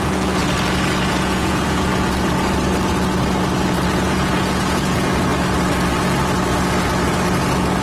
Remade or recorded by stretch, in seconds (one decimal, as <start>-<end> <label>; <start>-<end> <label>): 0.0-0.4 remade; 0.4-1.1 recorded; 1.1-1.9 remade; 1.9-3.9 recorded; 3.9-5.3 remade; 5.3-7.8 recorded